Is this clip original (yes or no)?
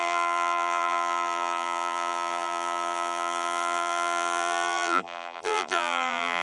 no